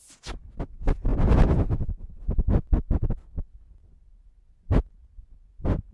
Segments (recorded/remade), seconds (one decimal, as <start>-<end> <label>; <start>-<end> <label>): 0.0-5.9 recorded